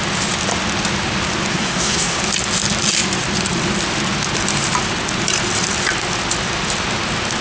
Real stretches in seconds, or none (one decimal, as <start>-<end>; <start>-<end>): 0.0-1.5; 2.2-7.4

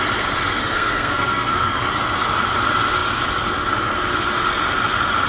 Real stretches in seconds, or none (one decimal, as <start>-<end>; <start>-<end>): 0.0-0.6; 1.8-5.3

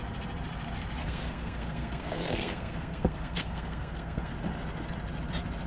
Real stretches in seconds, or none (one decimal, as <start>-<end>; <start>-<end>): 0.0-1.0; 4.3-5.7

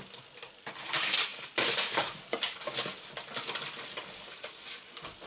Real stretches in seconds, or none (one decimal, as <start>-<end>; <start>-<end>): 0.0-5.3

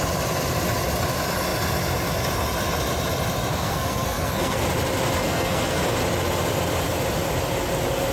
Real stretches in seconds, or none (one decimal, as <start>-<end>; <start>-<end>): 0.0-3.5; 4.6-5.2; 5.8-8.1